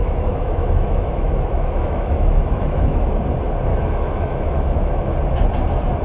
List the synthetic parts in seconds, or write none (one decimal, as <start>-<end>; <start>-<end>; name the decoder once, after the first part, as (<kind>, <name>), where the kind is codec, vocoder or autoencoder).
0.0-3.1 (autoencoder, DAC-VAE); 3.7-5.0